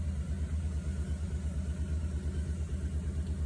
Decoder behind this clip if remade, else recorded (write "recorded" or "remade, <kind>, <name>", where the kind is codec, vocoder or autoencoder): recorded